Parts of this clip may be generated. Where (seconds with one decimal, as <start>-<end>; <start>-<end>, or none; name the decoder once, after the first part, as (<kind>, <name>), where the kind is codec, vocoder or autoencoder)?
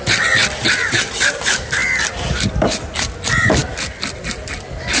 none